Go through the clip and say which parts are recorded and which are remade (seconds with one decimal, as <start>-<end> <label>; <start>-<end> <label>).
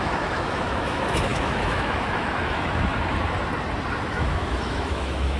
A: 0.0-2.9 remade; 2.9-4.1 recorded; 4.1-5.4 remade